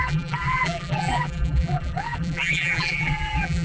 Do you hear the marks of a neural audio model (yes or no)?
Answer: yes